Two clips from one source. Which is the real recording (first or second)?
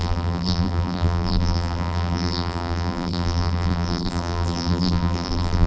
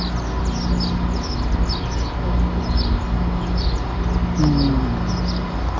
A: second